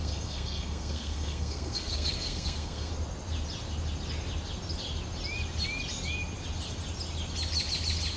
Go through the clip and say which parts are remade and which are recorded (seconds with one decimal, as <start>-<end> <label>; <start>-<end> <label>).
0.0-2.9 remade; 2.9-8.2 recorded